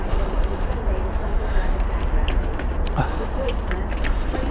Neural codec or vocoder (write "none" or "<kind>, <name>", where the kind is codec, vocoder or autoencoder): none